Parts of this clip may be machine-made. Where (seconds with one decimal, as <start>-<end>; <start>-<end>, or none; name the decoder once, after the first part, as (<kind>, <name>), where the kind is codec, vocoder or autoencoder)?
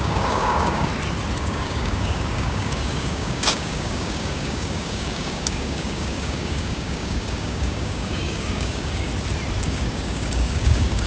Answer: 0.0-0.9 (codec, DAC); 1.4-9.1; 9.6-11.1